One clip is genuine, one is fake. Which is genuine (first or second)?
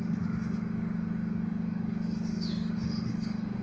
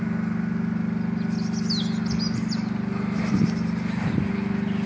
second